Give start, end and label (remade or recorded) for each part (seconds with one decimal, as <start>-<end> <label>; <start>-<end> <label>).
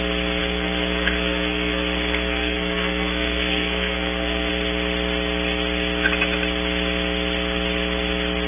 0.0-0.4 recorded; 0.4-4.5 remade; 4.5-8.5 recorded